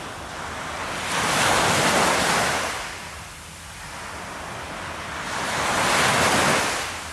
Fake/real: real